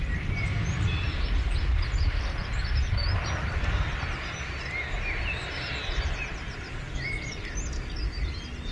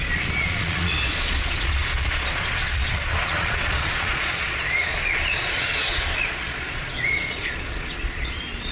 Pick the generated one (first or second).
second